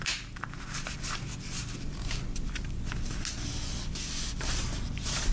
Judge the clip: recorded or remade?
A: recorded